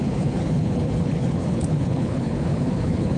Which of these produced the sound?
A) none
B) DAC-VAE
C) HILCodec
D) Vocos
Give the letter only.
C